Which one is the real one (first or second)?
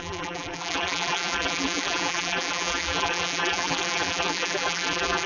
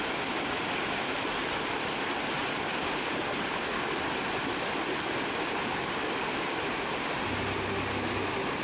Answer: second